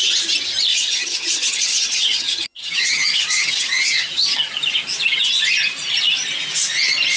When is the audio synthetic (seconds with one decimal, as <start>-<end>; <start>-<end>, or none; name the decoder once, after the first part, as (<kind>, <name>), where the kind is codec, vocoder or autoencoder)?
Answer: 0.7-4.6 (vocoder, HiFi-GAN)